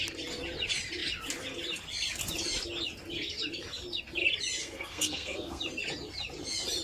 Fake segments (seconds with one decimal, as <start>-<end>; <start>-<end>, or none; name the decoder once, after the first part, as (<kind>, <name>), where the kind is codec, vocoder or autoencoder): 4.6-5.6 (codec, SNAC)